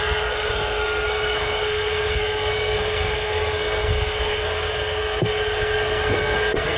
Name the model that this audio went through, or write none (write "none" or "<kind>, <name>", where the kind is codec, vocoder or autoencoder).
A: codec, SNAC